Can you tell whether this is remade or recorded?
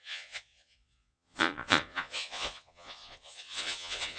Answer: remade